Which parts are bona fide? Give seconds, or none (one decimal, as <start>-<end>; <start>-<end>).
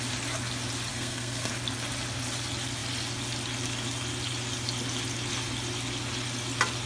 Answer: 0.0-0.9; 1.5-6.9